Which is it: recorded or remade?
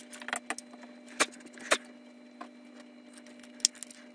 recorded